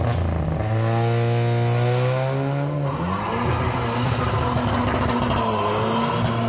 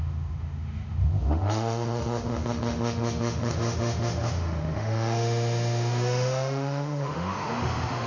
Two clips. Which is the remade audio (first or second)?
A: second